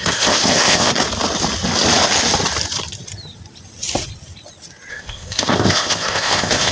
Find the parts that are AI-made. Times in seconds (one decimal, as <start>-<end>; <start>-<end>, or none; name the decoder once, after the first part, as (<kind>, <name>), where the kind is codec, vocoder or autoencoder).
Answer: 0.0-0.9 (codec, ZipCodec); 4.9-6.7